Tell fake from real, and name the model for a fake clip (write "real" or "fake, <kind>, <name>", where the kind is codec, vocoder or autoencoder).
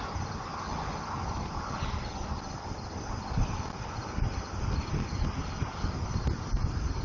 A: real